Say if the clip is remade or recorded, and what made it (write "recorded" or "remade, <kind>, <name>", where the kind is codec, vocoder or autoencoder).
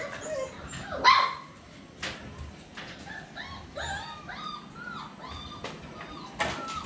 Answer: recorded